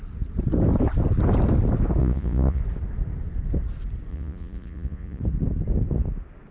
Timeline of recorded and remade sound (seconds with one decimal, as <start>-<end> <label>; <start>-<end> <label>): 0.0-2.0 recorded; 2.0-2.6 remade; 2.6-4.1 recorded; 4.1-5.2 remade; 5.2-6.5 recorded